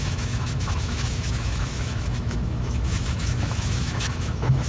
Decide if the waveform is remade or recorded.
remade